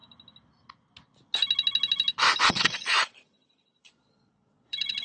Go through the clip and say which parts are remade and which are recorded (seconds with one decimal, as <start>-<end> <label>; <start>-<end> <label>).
0.0-2.5 recorded; 2.5-5.0 remade